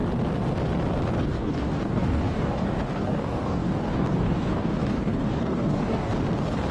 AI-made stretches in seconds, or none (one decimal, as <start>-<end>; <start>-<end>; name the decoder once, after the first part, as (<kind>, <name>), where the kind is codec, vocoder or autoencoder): 1.2-6.1 (codec, DAC)